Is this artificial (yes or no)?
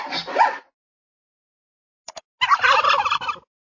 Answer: no